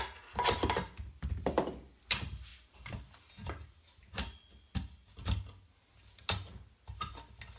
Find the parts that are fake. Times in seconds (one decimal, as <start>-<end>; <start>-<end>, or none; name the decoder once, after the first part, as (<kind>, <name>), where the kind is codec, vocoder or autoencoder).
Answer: none